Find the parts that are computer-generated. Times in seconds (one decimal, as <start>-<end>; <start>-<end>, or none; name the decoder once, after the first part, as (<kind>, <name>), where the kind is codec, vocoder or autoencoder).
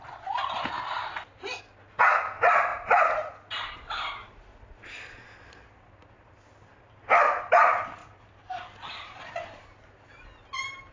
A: none